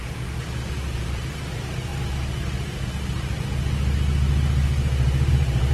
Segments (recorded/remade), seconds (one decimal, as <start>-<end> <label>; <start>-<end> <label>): 0.0-0.7 recorded; 0.7-1.9 remade; 1.9-5.3 recorded; 5.3-5.7 remade